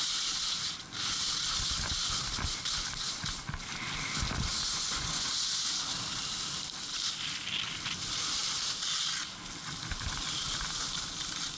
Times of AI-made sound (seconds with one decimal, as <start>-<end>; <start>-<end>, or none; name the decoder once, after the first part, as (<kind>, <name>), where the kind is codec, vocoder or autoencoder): 4.5-5.3 (vocoder, Vocos)